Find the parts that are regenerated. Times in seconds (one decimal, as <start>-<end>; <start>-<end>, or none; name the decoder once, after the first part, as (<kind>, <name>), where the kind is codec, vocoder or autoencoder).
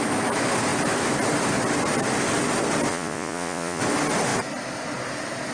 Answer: 2.9-3.8 (vocoder, Vocos)